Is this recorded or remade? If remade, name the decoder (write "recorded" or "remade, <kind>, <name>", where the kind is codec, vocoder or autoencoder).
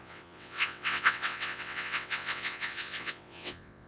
remade, vocoder, WaveNeXt